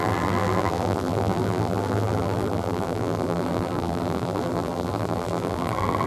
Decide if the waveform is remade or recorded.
remade